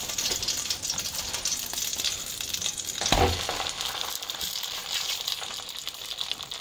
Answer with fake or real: fake